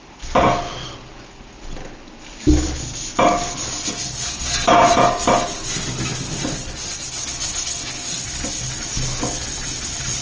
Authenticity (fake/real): real